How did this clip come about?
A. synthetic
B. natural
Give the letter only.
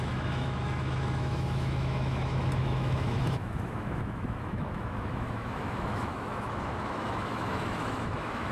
A